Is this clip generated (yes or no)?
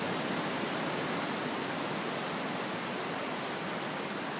no